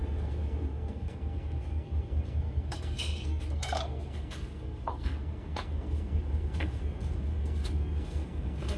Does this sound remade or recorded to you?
remade